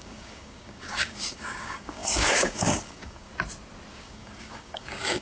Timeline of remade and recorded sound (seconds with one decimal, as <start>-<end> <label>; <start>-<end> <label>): 0.0-3.3 remade; 3.3-3.9 recorded; 3.9-5.2 remade